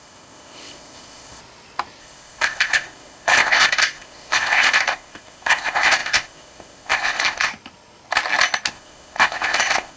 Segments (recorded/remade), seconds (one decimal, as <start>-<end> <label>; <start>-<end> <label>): 0.0-1.4 remade; 1.4-2.0 recorded; 2.0-7.5 remade; 7.5-8.7 recorded; 8.7-10.0 remade